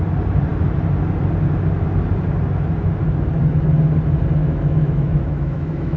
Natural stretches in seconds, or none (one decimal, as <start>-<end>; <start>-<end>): 0.0-4.4